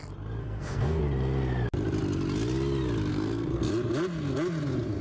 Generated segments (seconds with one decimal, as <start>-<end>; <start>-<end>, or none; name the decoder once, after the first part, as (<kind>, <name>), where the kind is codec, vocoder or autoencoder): 0.4-1.0 (codec, SNAC); 3.1-3.7